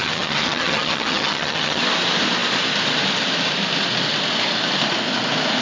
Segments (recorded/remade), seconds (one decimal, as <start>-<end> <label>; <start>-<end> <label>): 0.0-1.8 remade; 1.8-5.6 recorded